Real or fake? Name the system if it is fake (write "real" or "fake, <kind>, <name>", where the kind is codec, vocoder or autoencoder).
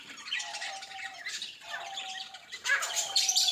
fake, vocoder, BigVGAN v2